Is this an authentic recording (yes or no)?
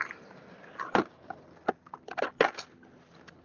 yes